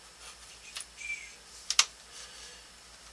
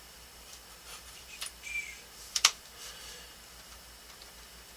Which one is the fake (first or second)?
second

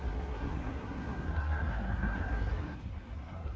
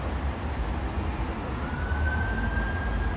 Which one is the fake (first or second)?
first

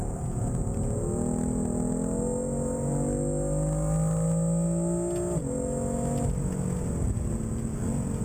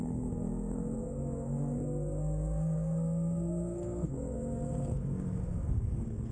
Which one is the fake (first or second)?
second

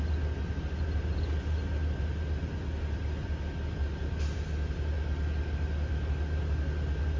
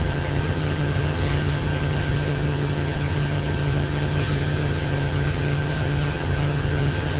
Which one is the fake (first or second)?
second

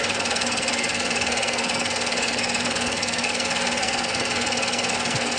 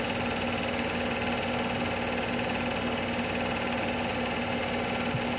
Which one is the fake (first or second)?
first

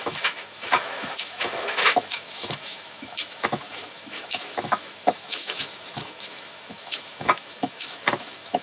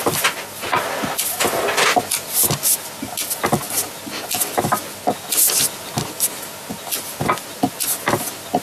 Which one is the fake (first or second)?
first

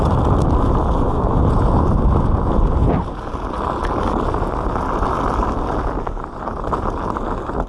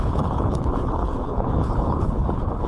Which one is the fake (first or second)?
second